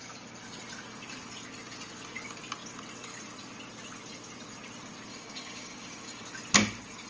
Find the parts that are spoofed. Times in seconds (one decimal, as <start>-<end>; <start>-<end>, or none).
5.1-6.2